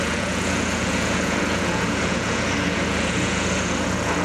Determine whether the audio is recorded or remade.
remade